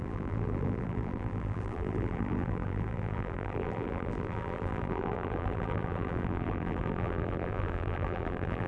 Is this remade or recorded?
remade